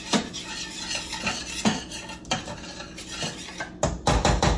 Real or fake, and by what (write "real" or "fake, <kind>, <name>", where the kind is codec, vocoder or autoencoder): real